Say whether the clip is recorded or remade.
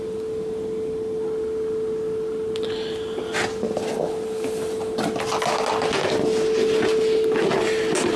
recorded